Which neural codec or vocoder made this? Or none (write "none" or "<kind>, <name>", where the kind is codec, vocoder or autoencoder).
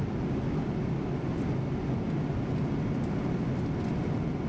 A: none